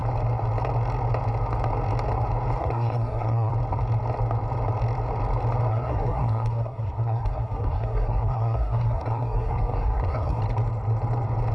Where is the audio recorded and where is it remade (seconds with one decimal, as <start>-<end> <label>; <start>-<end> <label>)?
0.0-2.6 recorded; 2.6-3.5 remade; 3.5-5.7 recorded; 5.7-10.4 remade; 10.4-11.5 recorded